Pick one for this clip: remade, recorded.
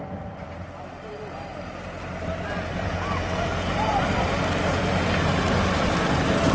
recorded